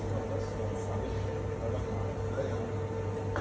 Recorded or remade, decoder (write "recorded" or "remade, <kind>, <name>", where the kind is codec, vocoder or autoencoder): recorded